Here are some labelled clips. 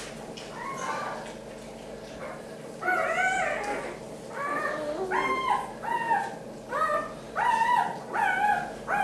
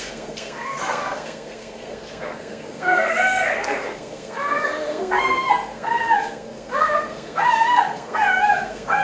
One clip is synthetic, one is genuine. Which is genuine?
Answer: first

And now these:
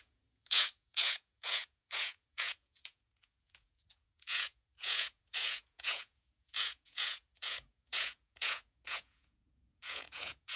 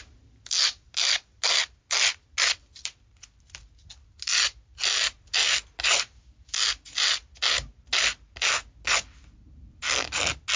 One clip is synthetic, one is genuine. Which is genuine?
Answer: second